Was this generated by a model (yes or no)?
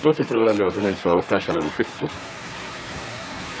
yes